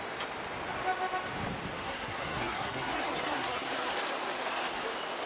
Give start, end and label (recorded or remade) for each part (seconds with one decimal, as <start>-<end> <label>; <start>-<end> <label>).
0.0-1.8 recorded; 1.8-3.9 remade; 3.9-5.3 recorded